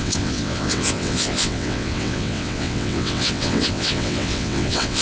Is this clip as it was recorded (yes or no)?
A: no